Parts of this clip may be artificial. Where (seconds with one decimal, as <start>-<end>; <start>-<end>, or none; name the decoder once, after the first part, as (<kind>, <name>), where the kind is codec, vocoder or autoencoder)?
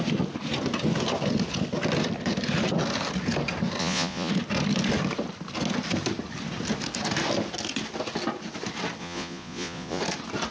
3.8-4.3 (vocoder, Vocos); 9.0-10.0